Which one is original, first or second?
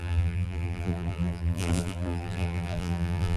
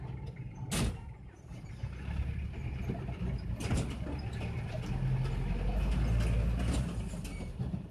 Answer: second